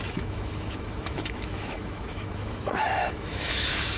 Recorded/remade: remade